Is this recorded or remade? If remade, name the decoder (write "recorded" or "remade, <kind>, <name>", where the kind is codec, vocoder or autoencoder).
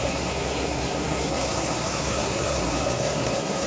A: remade, codec, SNAC